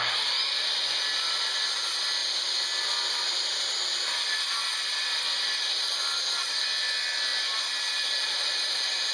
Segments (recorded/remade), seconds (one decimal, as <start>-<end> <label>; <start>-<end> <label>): 0.0-9.1 recorded